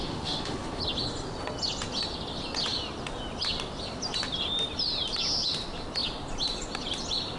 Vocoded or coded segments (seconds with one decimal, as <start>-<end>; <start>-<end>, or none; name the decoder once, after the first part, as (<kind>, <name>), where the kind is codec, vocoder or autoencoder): 0.0-0.8 (autoencoder, DAC-VAE)